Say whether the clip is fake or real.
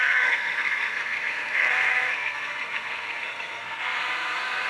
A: fake